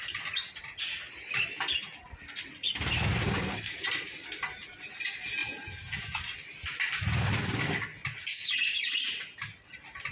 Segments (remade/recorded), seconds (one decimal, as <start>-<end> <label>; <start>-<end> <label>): 0.0-5.4 recorded; 5.4-6.2 remade; 6.2-10.1 recorded